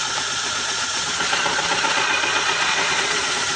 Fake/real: fake